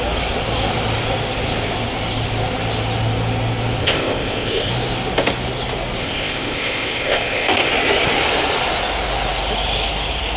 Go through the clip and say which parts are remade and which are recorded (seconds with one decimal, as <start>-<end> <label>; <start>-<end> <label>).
0.0-3.8 recorded; 3.8-4.7 remade; 4.7-6.0 recorded; 6.0-7.7 remade; 7.7-10.4 recorded

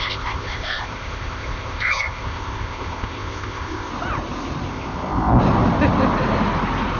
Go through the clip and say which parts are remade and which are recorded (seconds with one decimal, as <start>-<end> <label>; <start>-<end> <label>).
0.0-3.9 remade; 3.9-4.7 recorded; 4.7-5.4 remade; 5.4-7.0 recorded

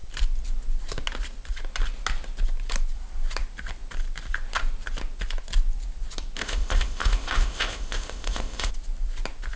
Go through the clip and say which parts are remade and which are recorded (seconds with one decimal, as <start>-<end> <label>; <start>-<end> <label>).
0.0-6.4 recorded; 6.4-8.7 remade; 8.7-9.6 recorded